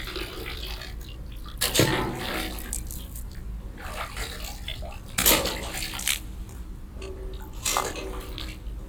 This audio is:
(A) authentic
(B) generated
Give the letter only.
A